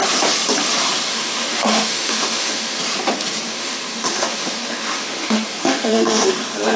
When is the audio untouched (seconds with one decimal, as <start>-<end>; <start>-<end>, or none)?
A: 0.0-1.1; 2.8-3.5; 6.3-6.8